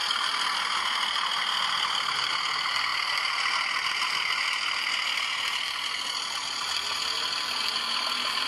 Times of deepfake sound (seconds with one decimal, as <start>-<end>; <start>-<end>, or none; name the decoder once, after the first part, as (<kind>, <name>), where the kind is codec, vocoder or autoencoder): none